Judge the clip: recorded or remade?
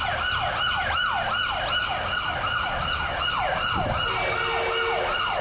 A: recorded